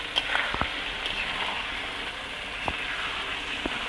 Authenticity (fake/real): real